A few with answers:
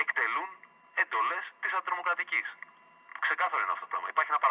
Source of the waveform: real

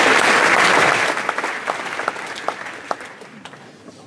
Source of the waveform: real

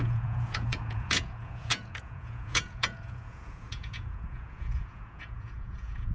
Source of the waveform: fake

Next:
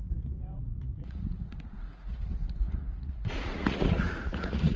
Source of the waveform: fake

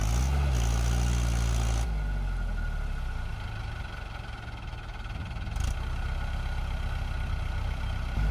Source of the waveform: real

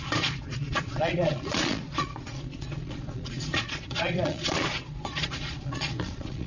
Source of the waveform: fake